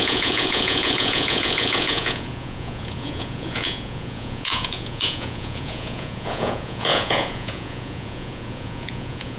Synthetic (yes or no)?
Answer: yes